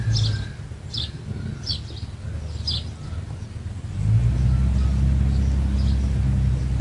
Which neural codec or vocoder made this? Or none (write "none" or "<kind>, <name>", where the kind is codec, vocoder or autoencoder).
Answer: none